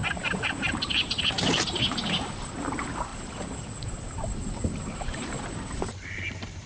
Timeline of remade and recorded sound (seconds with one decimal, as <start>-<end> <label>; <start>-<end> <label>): 0.0-6.7 remade